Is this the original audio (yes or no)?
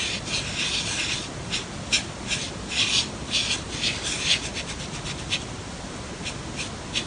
yes